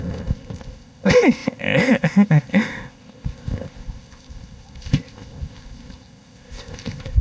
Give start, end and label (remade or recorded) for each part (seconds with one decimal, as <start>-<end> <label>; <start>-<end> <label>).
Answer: 0.0-7.2 remade